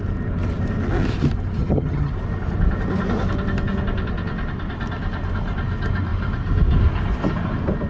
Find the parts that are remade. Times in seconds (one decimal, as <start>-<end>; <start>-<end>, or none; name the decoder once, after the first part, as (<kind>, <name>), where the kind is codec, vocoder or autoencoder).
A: 1.6-2.1 (vocoder, HiFi-GAN)